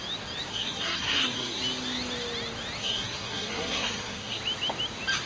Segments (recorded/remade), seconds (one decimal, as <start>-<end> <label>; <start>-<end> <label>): 0.0-0.5 recorded; 0.5-1.6 remade; 1.6-2.8 recorded; 2.8-4.4 remade; 4.4-5.3 recorded